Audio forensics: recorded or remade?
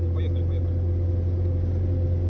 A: recorded